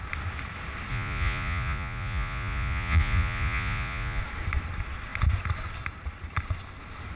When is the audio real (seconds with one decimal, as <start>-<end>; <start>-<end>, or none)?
0.0-0.9; 4.2-7.2